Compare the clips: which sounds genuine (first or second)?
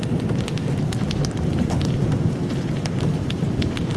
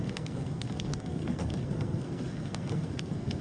first